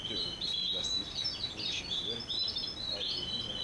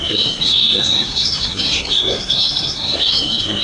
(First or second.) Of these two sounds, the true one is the first